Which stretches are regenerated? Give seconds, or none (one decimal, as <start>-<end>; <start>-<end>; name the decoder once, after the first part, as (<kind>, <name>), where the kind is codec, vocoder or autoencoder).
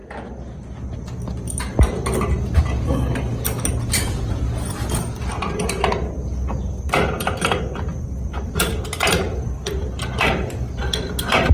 none